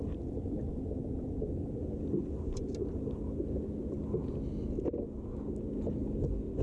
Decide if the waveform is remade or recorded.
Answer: recorded